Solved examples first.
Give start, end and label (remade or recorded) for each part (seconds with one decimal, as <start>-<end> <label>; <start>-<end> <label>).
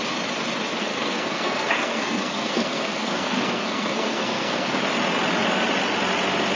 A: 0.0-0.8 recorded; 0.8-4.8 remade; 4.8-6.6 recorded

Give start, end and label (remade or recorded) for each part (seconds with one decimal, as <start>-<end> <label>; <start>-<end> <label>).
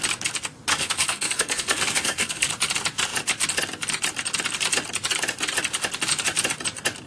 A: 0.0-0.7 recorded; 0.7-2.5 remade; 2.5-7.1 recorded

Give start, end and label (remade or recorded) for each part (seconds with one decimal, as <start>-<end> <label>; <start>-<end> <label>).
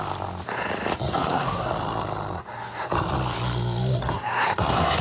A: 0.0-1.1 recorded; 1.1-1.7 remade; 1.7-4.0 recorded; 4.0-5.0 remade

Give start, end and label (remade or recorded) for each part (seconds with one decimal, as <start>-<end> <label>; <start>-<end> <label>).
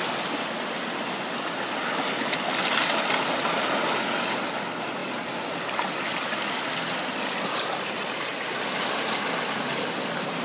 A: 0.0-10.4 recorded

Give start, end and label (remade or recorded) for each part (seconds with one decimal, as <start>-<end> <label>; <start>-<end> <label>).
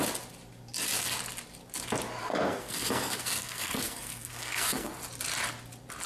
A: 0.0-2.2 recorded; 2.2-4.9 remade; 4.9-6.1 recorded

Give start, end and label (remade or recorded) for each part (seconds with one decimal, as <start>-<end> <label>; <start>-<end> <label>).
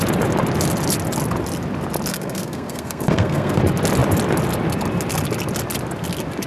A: 0.0-2.1 recorded; 2.1-3.6 remade; 3.6-6.5 recorded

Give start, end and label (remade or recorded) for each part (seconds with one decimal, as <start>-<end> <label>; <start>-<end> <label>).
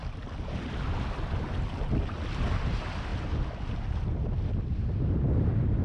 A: 0.0-5.8 recorded